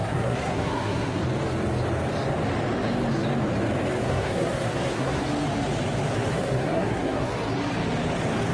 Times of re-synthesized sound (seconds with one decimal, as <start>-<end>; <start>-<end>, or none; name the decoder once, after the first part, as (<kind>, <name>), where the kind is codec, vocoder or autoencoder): 0.0-1.2 (codec, SNAC); 4.0-5.2; 6.3-7.3